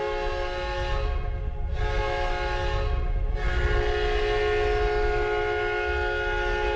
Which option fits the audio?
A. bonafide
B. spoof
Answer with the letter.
A